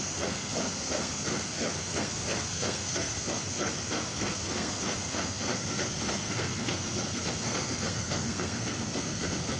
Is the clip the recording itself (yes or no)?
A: no